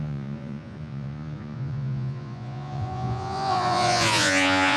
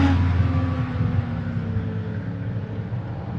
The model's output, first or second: first